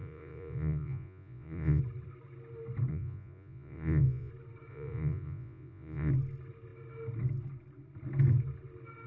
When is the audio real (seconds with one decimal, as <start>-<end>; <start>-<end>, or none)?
1.8-2.9; 4.3-4.7; 6.1-9.1